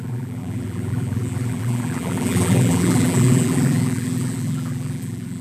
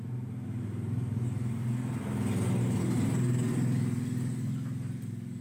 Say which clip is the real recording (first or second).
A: second